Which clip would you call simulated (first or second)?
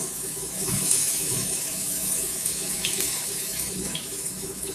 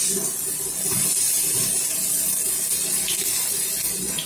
first